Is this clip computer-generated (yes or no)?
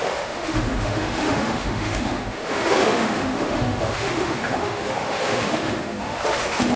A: yes